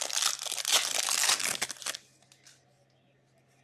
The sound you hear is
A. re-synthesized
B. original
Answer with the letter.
B